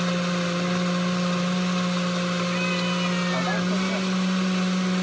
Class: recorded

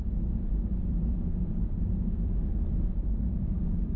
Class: remade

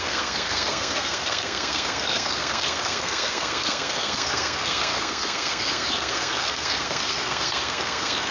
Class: remade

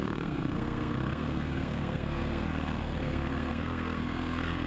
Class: remade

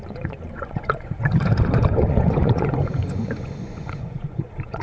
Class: remade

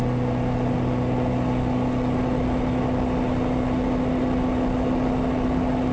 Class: recorded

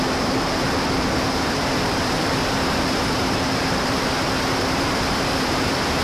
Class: remade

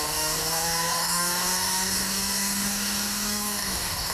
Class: remade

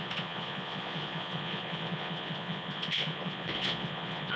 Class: remade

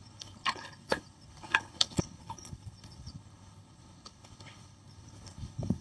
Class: remade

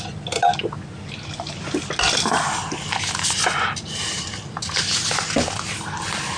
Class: recorded